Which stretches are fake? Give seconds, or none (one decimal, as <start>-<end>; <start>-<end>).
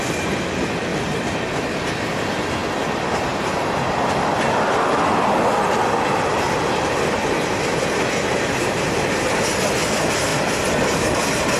8.3-9.4